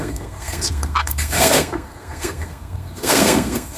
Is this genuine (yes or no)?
no